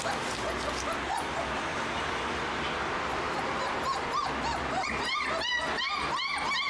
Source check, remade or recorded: recorded